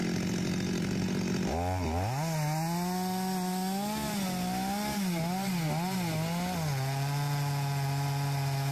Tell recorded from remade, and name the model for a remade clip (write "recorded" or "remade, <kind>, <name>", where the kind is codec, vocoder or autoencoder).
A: recorded